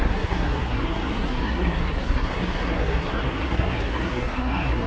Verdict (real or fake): fake